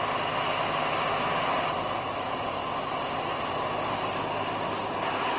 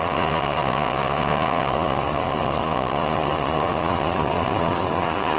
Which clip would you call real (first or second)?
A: first